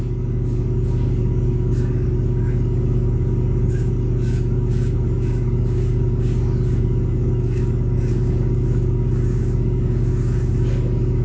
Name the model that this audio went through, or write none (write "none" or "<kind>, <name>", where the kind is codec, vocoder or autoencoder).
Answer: codec, DAC